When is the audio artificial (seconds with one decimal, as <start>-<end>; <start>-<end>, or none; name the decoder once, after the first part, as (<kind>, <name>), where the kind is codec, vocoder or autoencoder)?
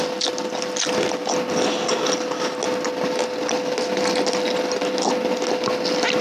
none